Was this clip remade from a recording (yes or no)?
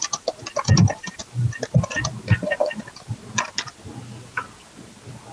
no